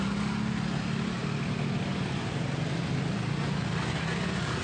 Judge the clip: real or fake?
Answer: real